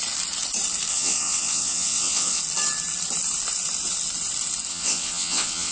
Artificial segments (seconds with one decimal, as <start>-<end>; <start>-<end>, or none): 0.9-2.4; 4.7-5.7